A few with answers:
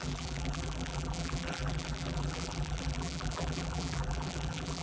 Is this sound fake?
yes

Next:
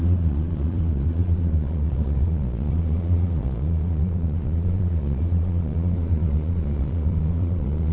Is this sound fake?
yes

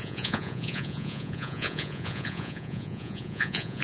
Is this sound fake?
yes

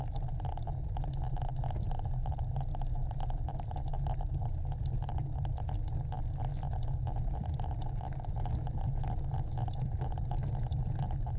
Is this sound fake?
no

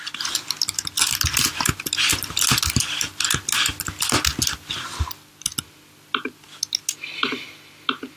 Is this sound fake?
no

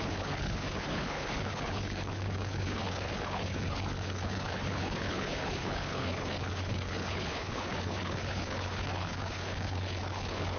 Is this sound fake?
yes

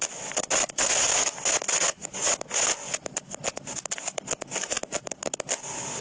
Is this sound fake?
no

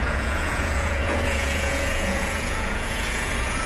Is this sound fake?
yes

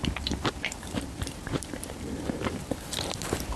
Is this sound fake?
yes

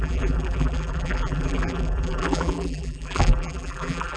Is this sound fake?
yes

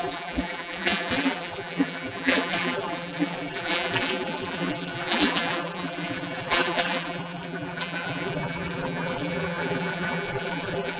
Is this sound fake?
yes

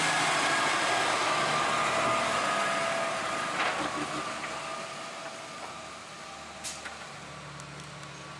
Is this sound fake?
no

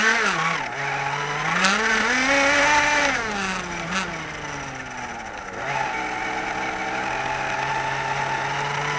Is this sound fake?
no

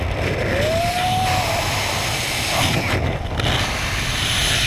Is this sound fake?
no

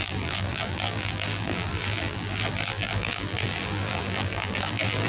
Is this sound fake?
yes